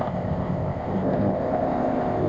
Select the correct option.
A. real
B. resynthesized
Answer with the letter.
B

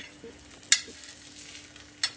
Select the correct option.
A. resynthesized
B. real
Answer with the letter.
B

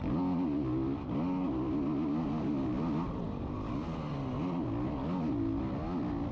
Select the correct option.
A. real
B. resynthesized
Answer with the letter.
A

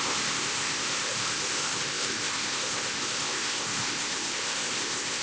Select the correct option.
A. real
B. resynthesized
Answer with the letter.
B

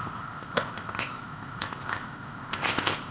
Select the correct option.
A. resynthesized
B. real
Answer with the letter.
A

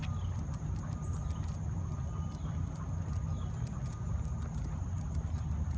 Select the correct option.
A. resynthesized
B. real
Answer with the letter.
B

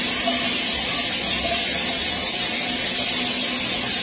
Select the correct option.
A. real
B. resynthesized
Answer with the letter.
A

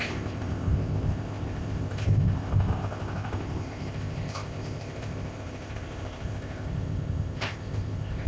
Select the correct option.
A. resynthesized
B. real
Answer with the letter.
A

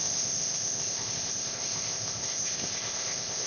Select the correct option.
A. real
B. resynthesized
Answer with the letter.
B